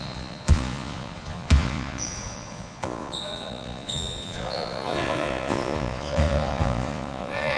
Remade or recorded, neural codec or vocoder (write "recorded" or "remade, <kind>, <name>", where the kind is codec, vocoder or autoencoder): remade, vocoder, Vocos